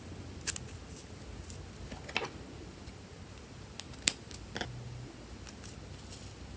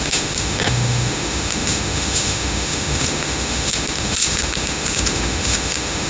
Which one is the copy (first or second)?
second